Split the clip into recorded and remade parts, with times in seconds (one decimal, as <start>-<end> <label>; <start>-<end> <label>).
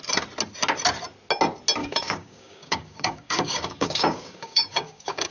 0.0-1.8 recorded; 1.8-5.3 remade